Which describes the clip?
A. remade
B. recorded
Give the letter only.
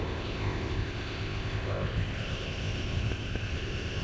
A